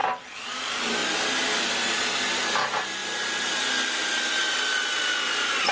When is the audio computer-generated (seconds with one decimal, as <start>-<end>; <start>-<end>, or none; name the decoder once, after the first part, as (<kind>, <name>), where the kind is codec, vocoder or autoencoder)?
1.0-2.1 (vocoder, BigVGAN v2)